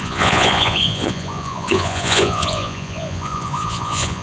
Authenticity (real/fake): fake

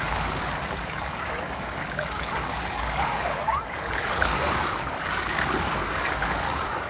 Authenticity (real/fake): fake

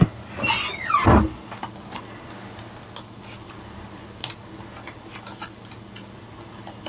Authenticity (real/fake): real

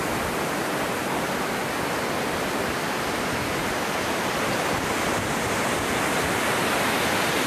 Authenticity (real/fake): real